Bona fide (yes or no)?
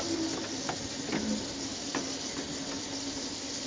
yes